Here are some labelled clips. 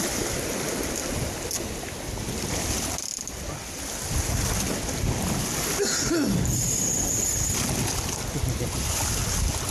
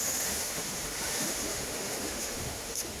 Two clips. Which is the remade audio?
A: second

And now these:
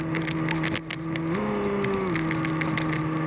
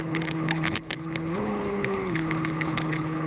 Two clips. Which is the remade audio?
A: second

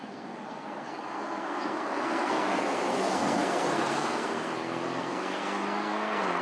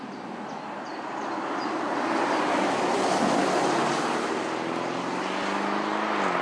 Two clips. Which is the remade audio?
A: first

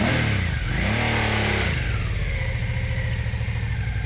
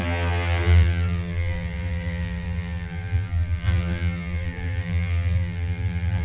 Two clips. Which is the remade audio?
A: second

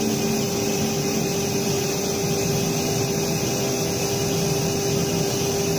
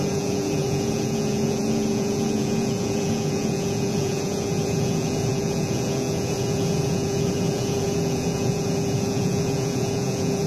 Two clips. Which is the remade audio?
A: second